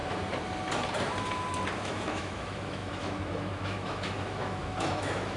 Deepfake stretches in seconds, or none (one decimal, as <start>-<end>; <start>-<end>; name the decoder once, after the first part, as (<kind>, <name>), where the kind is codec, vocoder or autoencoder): 1.8-5.4 (autoencoder, DAC-VAE)